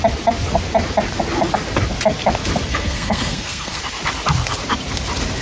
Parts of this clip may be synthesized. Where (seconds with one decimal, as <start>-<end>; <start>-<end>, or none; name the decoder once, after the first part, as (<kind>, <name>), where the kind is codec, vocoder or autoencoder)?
2.7-3.8 (codec, SNAC)